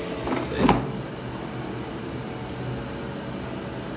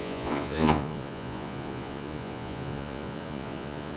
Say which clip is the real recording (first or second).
first